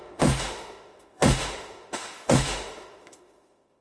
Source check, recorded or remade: remade